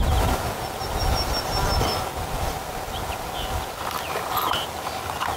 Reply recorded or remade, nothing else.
recorded